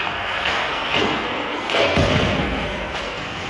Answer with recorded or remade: remade